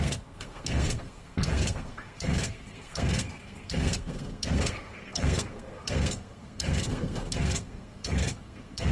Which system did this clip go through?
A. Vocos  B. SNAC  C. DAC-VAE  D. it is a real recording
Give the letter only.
B